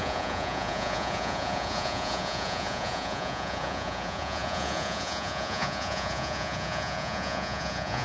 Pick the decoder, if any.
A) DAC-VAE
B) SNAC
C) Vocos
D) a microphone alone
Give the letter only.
C